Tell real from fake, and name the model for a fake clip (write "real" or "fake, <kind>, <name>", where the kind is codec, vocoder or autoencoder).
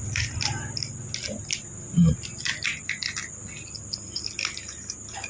real